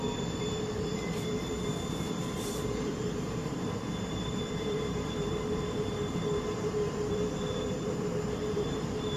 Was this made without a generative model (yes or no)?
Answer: no